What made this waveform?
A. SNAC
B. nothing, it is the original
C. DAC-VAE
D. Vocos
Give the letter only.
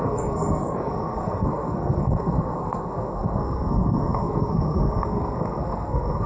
A